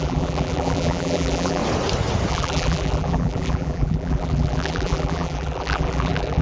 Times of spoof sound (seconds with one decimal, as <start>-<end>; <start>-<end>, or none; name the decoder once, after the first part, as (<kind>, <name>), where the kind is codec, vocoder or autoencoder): 0.0-1.6 (vocoder, BigVGAN v2); 2.3-6.4

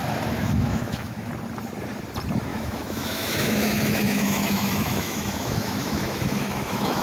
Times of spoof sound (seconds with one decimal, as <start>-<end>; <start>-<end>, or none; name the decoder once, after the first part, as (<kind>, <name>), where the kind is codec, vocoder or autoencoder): 0.4-1.3 (autoencoder, DAC-VAE); 2.5-7.0

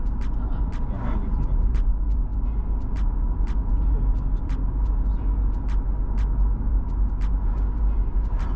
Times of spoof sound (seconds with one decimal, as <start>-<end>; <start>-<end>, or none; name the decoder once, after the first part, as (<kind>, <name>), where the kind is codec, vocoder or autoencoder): none

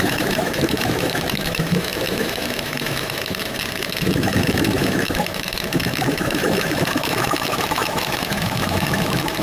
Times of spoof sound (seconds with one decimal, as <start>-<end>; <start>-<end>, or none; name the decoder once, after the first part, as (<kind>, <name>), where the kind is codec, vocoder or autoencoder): 0.0-9.4 (autoencoder, DAC-VAE)

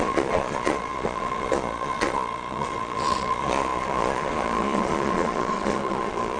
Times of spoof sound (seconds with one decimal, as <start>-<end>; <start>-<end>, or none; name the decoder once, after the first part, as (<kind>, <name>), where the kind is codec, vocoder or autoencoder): 0.0-6.4 (vocoder, Vocos)

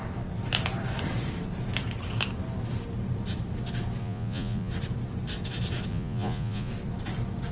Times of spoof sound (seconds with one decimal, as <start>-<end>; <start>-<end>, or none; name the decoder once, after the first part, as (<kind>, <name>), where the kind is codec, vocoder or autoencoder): 4.0-4.7 (vocoder, Vocos); 5.9-6.7

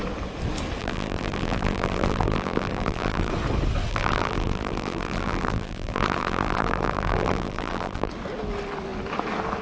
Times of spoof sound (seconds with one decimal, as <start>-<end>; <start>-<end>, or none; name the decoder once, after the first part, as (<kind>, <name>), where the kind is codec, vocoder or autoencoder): 0.8-3.3 (vocoder, BigVGAN v2); 3.9-8.1

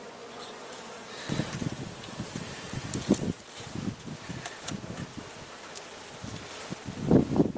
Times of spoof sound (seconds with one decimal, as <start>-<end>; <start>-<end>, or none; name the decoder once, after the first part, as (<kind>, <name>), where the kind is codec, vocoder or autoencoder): 0.0-0.7 (vocoder, Vocos)